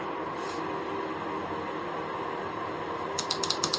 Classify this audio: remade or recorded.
recorded